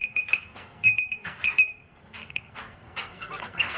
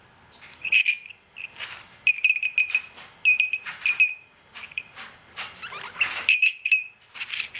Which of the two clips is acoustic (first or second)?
second